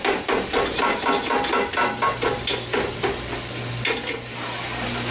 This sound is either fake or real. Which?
real